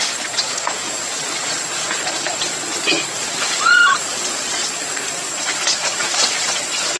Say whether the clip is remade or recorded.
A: remade